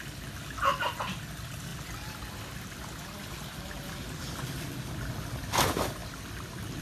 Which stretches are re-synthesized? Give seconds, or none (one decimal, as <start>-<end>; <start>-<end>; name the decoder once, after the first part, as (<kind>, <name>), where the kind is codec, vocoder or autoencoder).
none